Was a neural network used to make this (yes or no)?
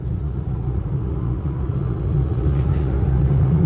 yes